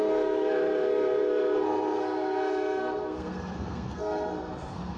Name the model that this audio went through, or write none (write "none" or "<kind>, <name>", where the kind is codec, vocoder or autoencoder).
codec, SNAC